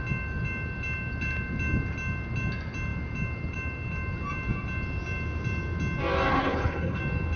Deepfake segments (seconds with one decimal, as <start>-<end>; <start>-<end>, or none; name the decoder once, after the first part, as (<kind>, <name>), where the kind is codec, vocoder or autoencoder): 6.3-7.0 (codec, HILCodec)